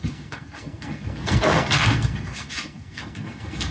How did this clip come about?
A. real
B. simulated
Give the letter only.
B